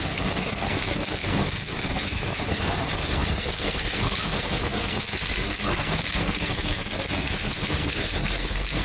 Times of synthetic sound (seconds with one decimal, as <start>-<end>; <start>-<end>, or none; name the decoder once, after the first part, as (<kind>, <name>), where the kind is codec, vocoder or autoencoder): 0.0-8.8 (codec, SNAC)